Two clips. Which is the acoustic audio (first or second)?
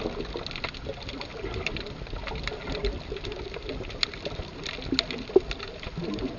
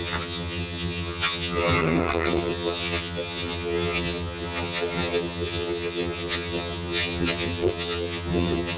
first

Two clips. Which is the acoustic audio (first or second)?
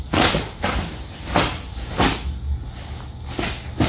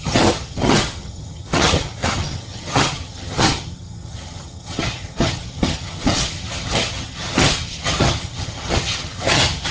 first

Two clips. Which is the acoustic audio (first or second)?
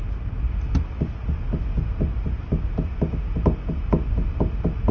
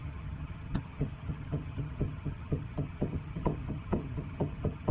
first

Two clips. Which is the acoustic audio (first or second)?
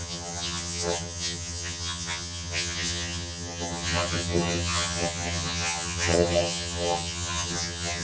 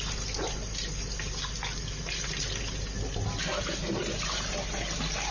second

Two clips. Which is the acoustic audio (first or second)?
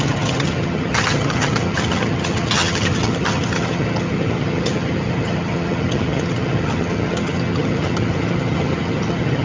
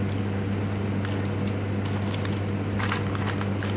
second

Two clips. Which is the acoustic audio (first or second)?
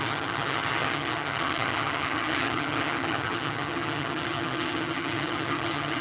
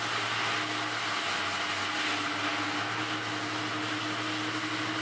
second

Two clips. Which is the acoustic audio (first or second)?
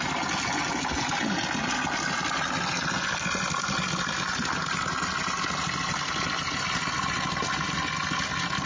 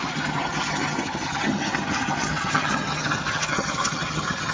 first